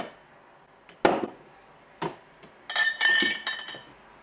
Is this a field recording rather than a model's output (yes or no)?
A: yes